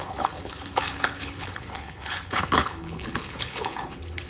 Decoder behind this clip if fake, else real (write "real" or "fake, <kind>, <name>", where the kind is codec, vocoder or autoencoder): fake, codec, HILCodec